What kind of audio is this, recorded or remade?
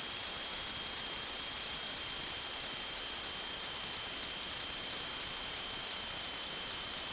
recorded